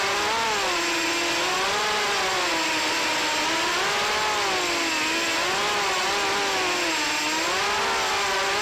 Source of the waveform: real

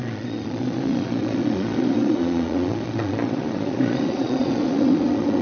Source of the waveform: fake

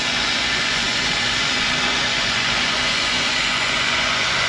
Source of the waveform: fake